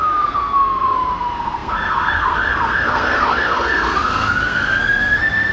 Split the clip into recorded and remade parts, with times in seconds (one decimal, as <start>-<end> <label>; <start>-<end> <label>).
0.0-5.5 remade